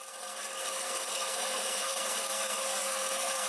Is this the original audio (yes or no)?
no